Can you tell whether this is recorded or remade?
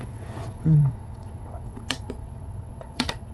remade